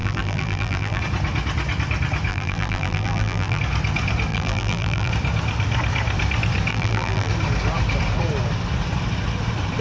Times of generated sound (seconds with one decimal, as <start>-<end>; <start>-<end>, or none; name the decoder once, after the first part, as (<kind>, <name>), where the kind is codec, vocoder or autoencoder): 0.0-1.0 (vocoder, BigVGAN v2); 2.3-3.6; 4.3-5.1; 6.7-7.3